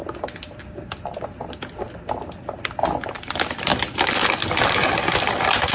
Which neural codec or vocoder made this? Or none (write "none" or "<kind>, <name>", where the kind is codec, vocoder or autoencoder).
none